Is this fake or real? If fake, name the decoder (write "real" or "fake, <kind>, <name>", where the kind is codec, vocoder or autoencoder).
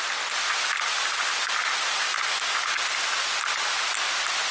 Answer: real